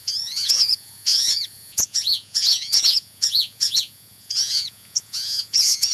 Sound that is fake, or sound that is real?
fake